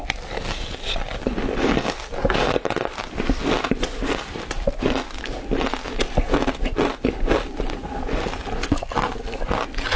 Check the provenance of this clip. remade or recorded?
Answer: recorded